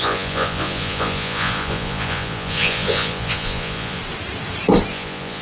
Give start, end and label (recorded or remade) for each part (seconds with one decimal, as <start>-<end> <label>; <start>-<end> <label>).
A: 0.0-4.0 remade; 4.0-4.9 recorded; 4.9-5.4 remade